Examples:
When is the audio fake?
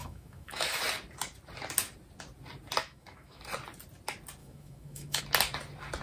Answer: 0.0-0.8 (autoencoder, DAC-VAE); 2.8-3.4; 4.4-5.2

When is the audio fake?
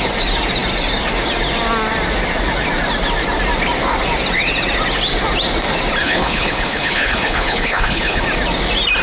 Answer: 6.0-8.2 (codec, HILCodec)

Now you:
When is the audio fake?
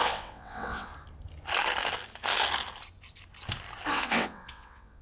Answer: 0.0-0.9 (vocoder, WaveNeXt); 3.9-5.0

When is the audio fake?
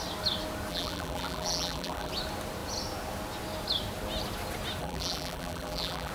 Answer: 0.7-2.1 (vocoder, BigVGAN v2); 4.8-6.1